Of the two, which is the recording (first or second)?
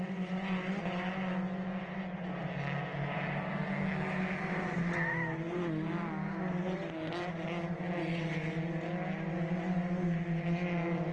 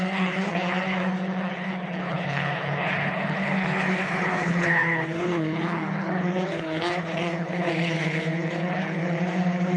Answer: first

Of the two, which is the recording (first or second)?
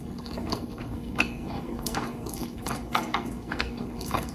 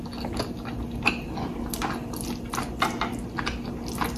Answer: second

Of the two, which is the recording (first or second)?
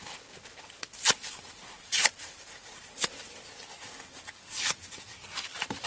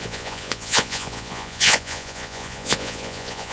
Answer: first